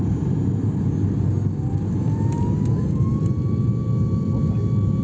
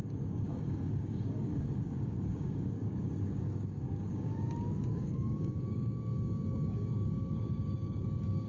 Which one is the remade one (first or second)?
second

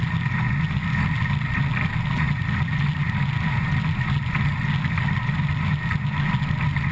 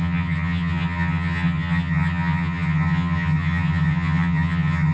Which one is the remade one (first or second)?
second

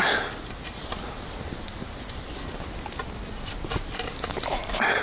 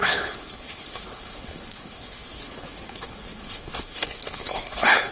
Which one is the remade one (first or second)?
second